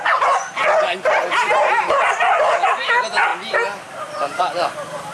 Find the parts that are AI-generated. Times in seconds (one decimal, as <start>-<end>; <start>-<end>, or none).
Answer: none